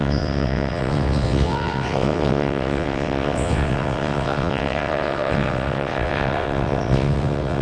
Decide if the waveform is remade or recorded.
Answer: remade